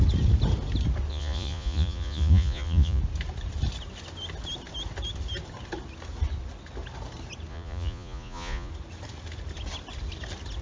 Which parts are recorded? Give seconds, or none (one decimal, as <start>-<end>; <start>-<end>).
0.0-1.1; 3.0-7.5; 8.7-10.6